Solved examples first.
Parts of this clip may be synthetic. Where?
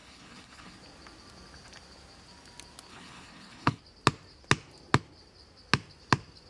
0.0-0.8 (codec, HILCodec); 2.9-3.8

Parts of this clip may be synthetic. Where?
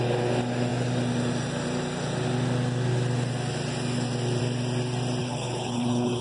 5.2-6.2 (codec, HILCodec)